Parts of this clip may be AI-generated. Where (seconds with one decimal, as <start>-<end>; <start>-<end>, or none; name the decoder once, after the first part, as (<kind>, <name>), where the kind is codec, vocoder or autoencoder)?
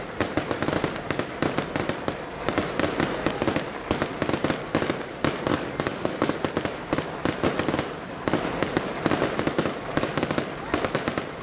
5.5-6.4 (codec, DAC); 9.9-10.6